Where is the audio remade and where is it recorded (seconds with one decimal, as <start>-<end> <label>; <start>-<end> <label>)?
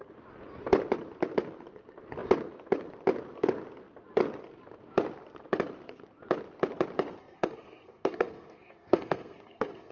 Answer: 0.0-7.2 recorded; 7.2-9.9 remade